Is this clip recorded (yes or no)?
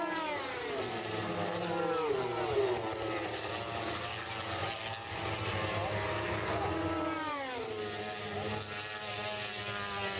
yes